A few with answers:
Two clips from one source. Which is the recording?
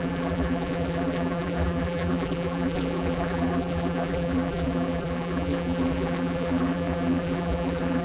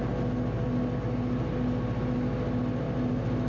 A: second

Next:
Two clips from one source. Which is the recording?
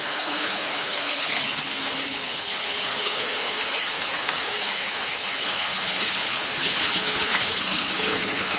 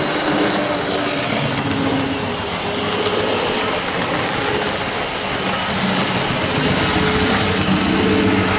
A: second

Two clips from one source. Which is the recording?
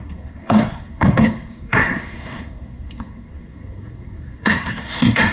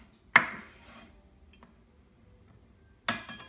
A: second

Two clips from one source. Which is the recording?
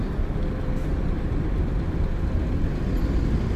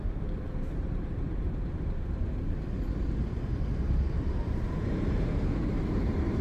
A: first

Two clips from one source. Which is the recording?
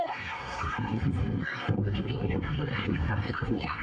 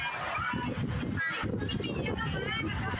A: second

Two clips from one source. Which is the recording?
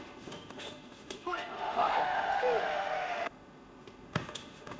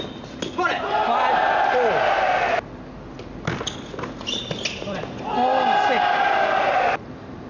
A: second